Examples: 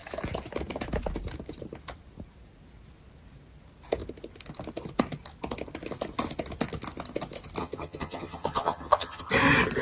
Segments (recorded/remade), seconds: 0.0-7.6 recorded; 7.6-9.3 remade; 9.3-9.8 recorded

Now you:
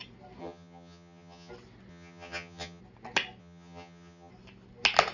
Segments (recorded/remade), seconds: 0.0-0.4 recorded; 0.4-1.5 remade; 1.5-1.9 recorded; 1.9-2.8 remade; 2.8-3.4 recorded; 3.4-4.3 remade; 4.3-5.1 recorded

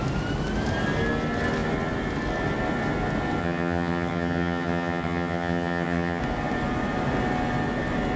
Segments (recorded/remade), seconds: 0.0-3.4 recorded; 3.4-6.2 remade; 6.2-8.2 recorded

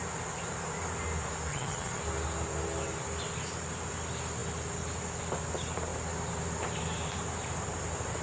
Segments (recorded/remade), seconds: 0.0-1.5 recorded; 1.5-2.0 remade; 2.0-8.2 recorded

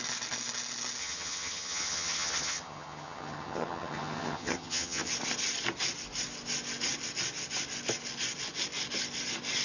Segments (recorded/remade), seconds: 0.0-1.0 recorded; 1.0-5.1 remade; 5.1-9.6 recorded

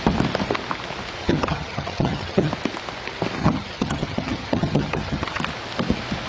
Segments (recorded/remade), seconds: 0.0-1.2 recorded; 1.2-2.5 remade; 2.5-3.4 recorded; 3.4-5.4 remade; 5.4-6.3 recorded

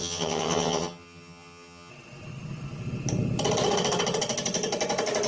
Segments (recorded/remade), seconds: 0.0-1.9 remade; 1.9-5.3 recorded